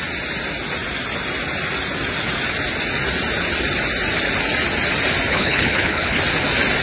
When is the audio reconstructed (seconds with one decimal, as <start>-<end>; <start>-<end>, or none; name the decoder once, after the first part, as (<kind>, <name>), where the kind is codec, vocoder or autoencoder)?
5.3-6.2 (codec, HILCodec)